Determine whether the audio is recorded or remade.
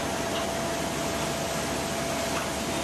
recorded